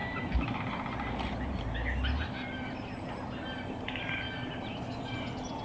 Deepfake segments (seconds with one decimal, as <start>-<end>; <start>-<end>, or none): none